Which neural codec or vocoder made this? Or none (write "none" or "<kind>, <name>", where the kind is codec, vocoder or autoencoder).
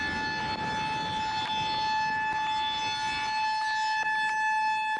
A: none